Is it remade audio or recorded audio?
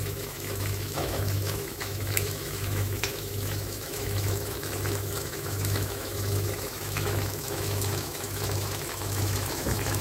remade